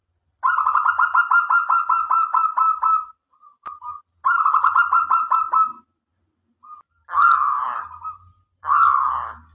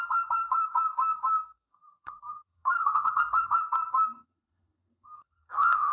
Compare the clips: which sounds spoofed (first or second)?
second